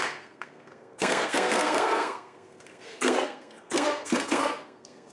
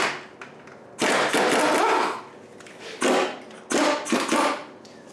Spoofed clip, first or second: first